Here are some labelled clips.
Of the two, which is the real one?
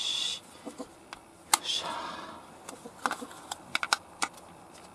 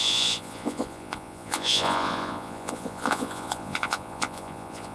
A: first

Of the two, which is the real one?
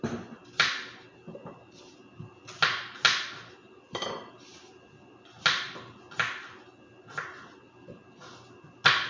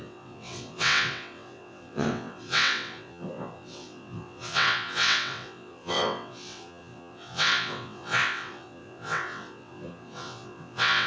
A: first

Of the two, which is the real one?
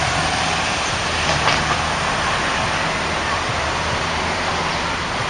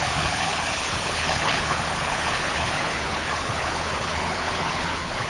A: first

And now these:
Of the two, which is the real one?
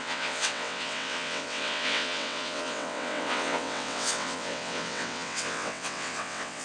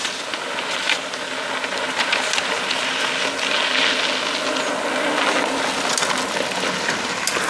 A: second